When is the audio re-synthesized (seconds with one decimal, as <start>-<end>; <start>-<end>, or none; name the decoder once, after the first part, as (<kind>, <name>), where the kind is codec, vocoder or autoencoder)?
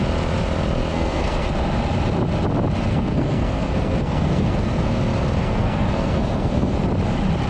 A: 0.9-1.5 (codec, SNAC); 2.9-5.0; 5.4-6.9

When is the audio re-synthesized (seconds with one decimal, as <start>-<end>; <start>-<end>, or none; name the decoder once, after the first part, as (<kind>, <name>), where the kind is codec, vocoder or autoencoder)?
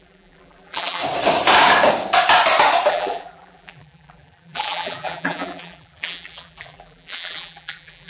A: 0.0-1.0 (vocoder, BigVGAN v2); 2.9-8.1